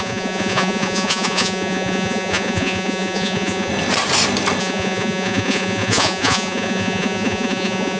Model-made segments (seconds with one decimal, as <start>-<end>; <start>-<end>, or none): 0.0-3.7; 4.6-8.0